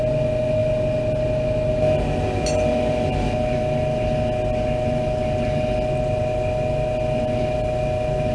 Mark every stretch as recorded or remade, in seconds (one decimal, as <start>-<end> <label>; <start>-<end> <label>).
0.0-8.3 recorded